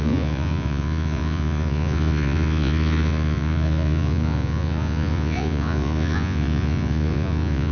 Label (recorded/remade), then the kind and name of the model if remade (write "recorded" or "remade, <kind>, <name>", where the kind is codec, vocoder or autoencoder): remade, vocoder, Vocos